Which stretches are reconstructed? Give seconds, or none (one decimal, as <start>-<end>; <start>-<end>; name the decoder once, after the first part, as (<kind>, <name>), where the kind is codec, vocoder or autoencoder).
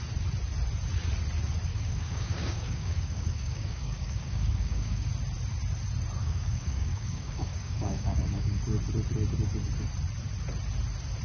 1.7-5.1 (codec, DAC); 6.2-8.6